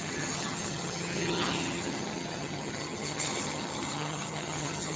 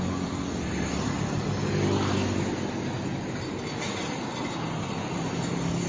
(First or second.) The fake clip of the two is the first